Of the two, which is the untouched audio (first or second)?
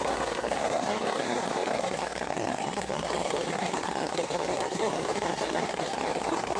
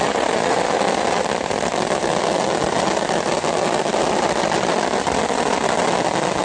second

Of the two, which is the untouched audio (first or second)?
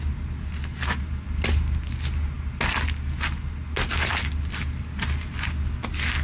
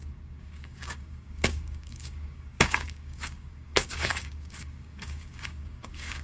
first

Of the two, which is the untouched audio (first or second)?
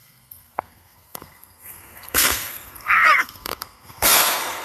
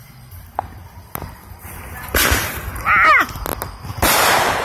second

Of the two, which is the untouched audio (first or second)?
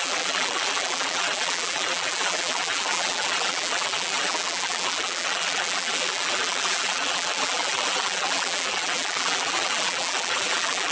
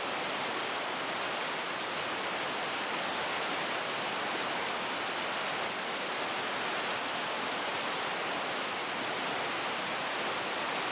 second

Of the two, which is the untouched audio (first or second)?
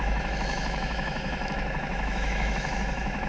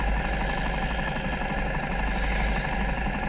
second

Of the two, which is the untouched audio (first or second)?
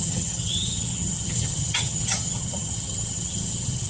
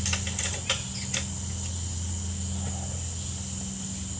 second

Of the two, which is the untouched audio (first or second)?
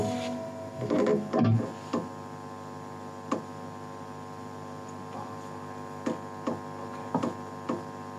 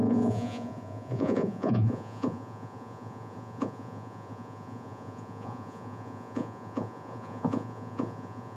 first